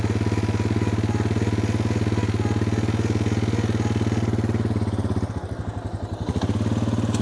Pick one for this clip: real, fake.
real